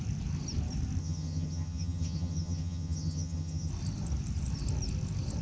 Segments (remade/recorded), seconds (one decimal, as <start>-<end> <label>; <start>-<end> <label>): 0.0-1.0 recorded; 1.0-3.7 remade; 3.7-5.4 recorded